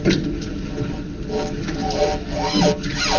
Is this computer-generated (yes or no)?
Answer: no